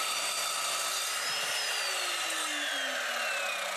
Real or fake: real